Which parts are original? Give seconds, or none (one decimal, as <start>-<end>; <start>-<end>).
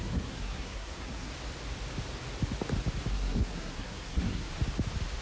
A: 1.3-3.1; 4.5-5.2